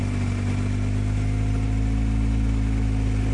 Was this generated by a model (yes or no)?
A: no